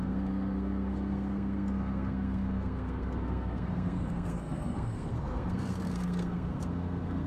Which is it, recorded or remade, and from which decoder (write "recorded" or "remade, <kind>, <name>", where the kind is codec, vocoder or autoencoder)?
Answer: remade, codec, SNAC